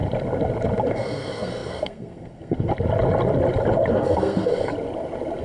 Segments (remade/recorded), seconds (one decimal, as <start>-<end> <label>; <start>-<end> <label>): 0.0-0.9 recorded; 0.9-2.7 remade; 2.7-3.9 recorded; 3.9-4.7 remade; 4.7-5.4 recorded